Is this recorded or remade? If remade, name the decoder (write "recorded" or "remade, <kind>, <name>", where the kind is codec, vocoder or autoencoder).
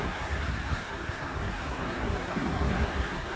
remade, codec, SNAC